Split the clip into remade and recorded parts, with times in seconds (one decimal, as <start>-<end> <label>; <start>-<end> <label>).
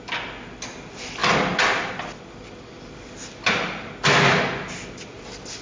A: 0.0-5.6 recorded